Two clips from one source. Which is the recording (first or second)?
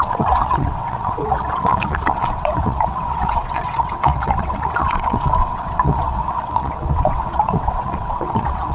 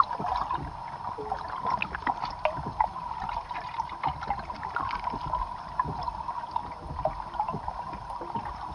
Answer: second